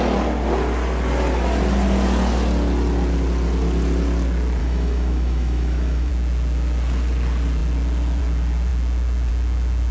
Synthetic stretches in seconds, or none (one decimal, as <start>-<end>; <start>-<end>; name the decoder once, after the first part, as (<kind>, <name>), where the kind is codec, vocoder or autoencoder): 4.6-6.1 (autoencoder, DAC-VAE)